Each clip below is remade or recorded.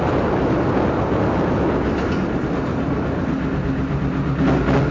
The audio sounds recorded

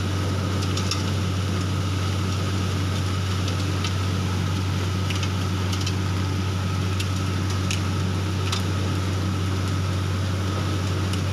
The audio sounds recorded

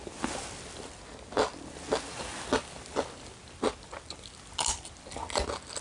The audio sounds recorded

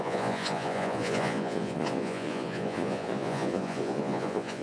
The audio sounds remade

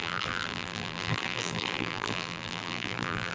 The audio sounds remade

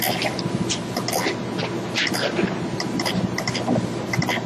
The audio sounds recorded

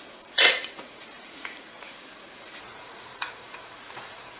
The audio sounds remade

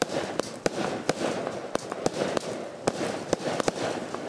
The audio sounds remade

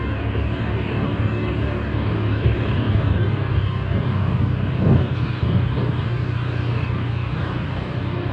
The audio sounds remade